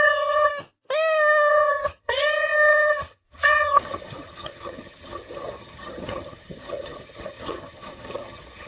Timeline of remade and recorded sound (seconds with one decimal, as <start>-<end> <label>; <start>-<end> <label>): 0.0-0.5 remade; 0.5-1.5 recorded; 1.5-8.7 remade